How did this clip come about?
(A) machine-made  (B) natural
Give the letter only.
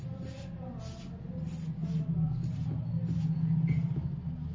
B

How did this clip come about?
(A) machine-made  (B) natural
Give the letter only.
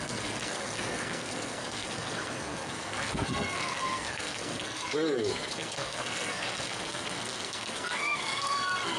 A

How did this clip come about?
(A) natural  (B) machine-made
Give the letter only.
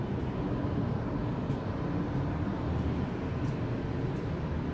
A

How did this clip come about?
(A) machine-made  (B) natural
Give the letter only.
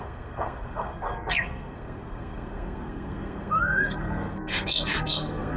A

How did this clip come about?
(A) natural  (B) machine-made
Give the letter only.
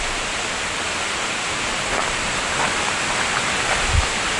A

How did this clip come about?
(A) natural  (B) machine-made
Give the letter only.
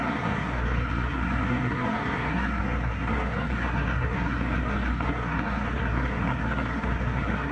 B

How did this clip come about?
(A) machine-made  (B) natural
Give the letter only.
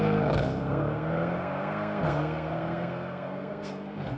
A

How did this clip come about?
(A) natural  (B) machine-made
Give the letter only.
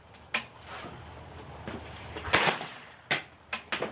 A